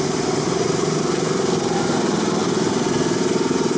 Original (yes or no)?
yes